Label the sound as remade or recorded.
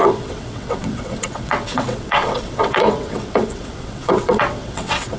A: remade